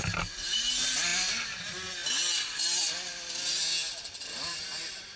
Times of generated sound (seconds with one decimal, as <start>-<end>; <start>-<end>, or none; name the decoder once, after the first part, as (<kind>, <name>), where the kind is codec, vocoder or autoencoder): none